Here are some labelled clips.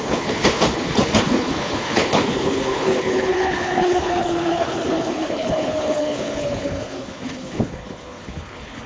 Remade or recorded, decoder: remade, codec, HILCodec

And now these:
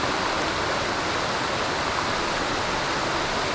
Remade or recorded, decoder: recorded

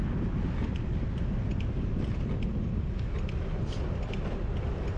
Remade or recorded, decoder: recorded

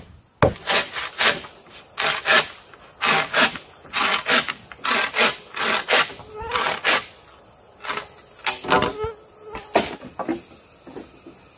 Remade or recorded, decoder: recorded